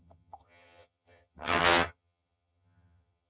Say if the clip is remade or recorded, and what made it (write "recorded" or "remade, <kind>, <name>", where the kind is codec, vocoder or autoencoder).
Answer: remade, vocoder, HiFi-GAN